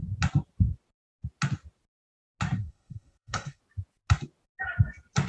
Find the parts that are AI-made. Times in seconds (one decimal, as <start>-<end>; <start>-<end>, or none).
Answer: 2.6-3.6